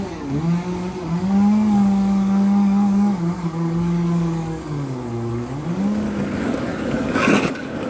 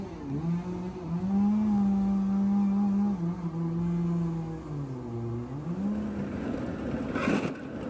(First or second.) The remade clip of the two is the first